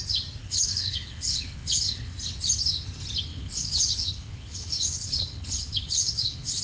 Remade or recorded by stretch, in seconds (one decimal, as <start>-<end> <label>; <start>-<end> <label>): 0.0-0.4 recorded; 0.4-2.1 remade; 2.1-3.3 recorded; 3.3-6.6 remade